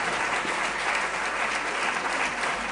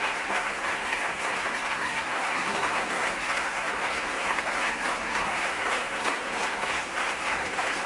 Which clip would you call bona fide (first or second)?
first